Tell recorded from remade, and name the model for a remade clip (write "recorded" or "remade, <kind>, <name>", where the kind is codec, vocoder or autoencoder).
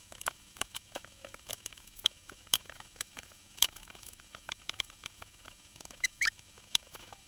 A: remade, autoencoder, DAC-VAE